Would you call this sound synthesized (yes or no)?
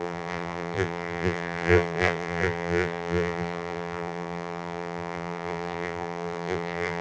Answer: yes